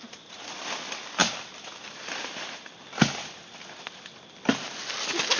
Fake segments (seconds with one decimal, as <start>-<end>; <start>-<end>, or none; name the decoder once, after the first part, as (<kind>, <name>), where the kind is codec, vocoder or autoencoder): none